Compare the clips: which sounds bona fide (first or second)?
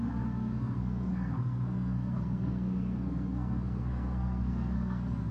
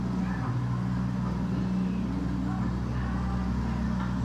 second